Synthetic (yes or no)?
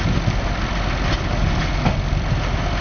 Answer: no